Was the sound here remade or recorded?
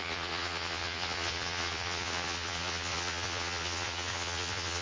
remade